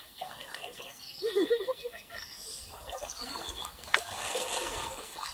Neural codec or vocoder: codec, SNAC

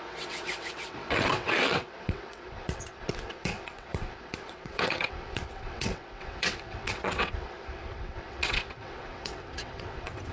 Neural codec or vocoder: vocoder, WaveNeXt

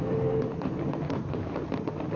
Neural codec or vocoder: vocoder, BigVGAN v2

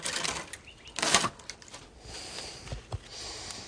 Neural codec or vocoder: none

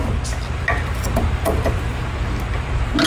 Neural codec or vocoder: none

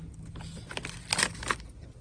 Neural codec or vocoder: none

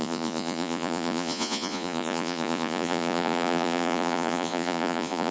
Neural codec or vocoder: vocoder, Vocos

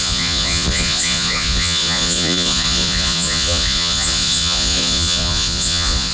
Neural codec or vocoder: vocoder, Vocos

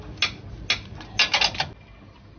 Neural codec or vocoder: none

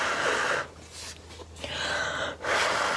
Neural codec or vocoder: none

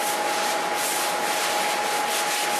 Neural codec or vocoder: none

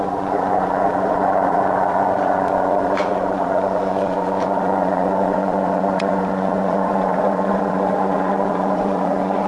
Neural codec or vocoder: vocoder, Vocos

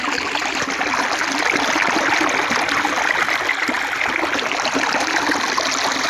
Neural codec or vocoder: none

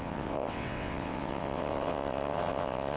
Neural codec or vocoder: vocoder, WaveNeXt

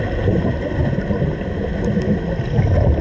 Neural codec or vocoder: none